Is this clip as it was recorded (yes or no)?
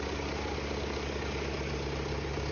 yes